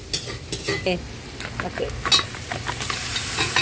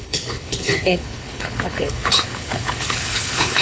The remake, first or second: second